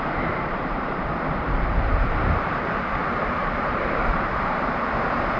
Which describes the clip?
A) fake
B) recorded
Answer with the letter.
A